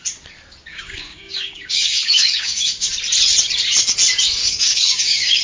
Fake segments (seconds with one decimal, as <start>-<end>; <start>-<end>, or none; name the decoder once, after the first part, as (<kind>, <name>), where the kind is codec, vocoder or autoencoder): 0.7-2.9 (codec, DAC); 4.4-5.4